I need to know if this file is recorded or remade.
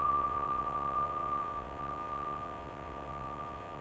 remade